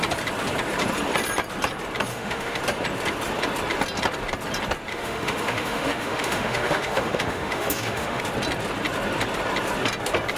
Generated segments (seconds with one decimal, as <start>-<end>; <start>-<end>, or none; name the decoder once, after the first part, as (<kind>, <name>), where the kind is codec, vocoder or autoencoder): 2.1-2.6 (autoencoder, DAC-VAE); 4.9-8.2